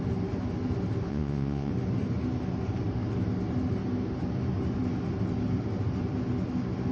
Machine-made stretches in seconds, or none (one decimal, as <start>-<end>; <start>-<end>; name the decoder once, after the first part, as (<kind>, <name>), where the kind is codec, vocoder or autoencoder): 1.1-1.7 (vocoder, Vocos)